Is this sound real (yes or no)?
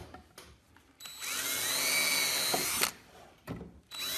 yes